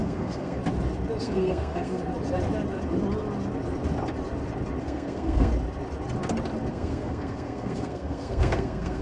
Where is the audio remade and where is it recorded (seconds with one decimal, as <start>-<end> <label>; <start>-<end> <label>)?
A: 0.0-0.6 remade; 0.6-1.2 recorded; 1.2-2.0 remade; 2.0-4.8 recorded; 4.8-5.5 remade; 5.5-6.7 recorded; 6.7-9.0 remade